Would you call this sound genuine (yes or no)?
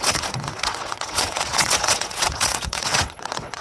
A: no